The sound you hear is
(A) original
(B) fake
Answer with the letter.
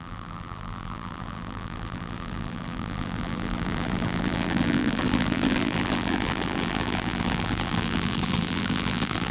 B